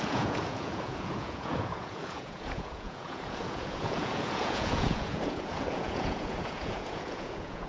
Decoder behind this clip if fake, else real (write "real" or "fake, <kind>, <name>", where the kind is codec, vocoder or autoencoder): fake, vocoder, Vocos